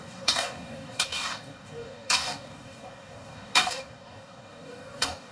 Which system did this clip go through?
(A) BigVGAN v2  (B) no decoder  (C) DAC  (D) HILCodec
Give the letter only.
C